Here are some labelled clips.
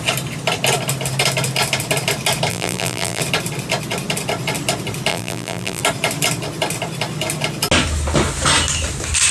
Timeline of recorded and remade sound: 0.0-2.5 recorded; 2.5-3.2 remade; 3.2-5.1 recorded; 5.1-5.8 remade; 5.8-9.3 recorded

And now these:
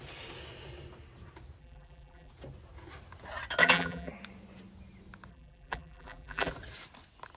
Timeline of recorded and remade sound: 0.0-1.6 recorded; 1.6-2.3 remade; 2.3-3.6 recorded; 3.6-4.1 remade; 4.1-5.3 recorded; 5.3-6.5 remade; 6.5-7.4 recorded